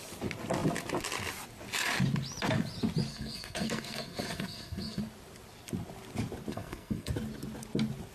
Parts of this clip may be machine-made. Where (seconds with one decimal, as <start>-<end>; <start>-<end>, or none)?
3.1-5.0; 6.5-7.1